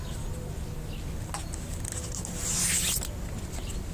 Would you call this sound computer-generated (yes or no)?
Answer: no